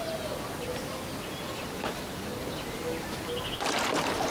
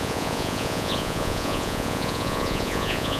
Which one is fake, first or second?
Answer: second